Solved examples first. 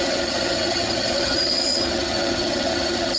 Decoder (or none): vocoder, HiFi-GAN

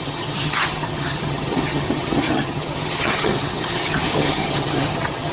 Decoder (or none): vocoder, HiFi-GAN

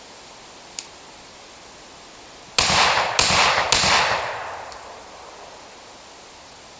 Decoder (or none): none